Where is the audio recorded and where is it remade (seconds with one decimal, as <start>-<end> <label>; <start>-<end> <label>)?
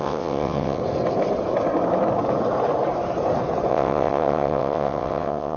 0.0-0.8 remade; 0.8-3.7 recorded; 3.7-5.6 remade